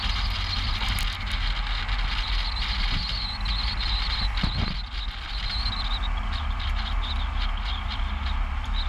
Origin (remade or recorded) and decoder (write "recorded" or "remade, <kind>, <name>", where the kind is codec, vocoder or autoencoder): recorded